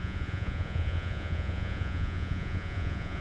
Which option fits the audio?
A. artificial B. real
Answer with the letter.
A